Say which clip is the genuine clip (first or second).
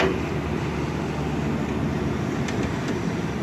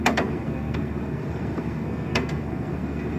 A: first